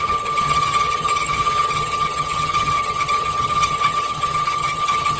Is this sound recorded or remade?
remade